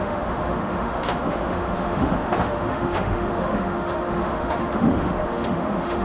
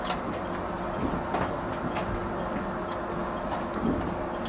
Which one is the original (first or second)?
second